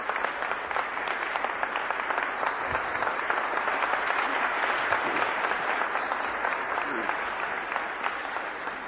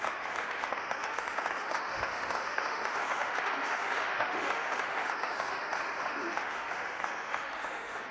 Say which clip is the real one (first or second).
first